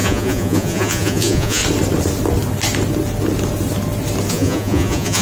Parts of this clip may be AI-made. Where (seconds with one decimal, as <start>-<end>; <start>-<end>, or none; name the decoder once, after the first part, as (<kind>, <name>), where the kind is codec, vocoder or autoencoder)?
0.0-1.6 (vocoder, Vocos); 4.3-5.2